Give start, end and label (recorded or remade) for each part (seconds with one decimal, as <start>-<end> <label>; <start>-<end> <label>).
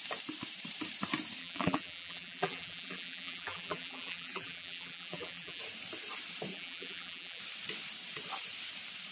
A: 0.0-1.4 recorded; 1.4-5.6 remade; 5.6-6.5 recorded; 6.5-7.4 remade; 7.4-9.1 recorded